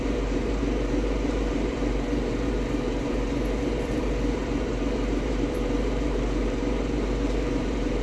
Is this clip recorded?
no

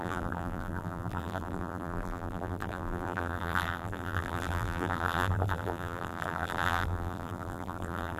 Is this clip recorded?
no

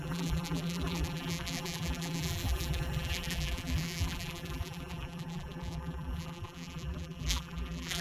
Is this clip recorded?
no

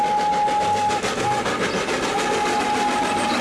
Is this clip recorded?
yes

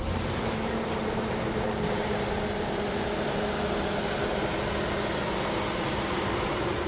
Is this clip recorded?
no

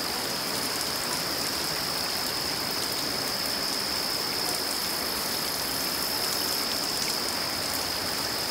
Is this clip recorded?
no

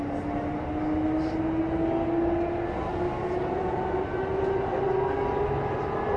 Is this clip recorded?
yes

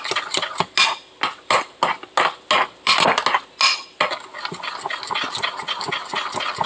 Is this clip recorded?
yes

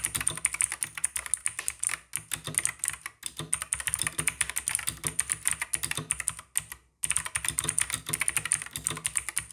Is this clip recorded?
yes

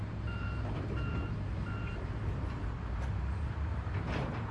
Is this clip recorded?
no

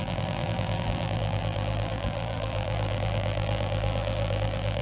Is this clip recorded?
no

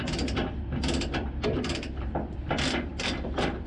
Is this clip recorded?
no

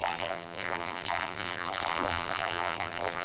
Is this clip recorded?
no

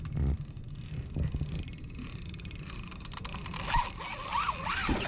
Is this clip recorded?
yes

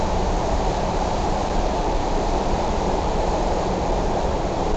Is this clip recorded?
no